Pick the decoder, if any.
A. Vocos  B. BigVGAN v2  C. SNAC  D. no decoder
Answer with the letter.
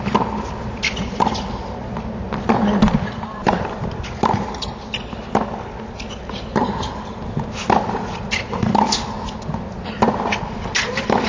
D